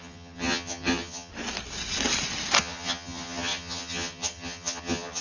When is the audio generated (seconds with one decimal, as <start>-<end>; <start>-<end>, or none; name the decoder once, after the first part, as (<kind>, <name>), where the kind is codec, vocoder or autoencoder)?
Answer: 0.0-1.3 (vocoder, HiFi-GAN); 2.6-5.2